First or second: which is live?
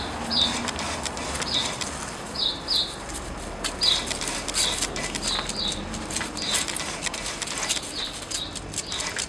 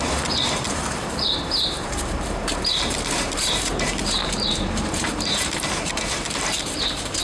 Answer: first